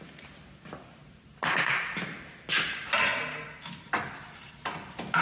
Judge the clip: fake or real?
real